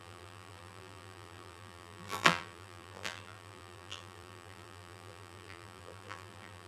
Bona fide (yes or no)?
no